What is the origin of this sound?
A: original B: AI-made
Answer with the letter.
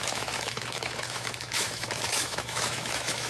B